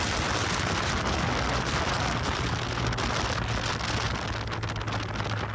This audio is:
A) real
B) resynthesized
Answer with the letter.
A